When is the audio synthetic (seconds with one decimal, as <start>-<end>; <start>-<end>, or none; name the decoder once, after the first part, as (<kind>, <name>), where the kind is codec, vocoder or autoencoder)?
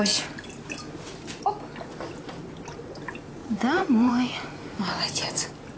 3.4-4.1 (vocoder, Vocos)